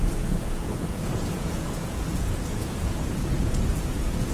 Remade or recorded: remade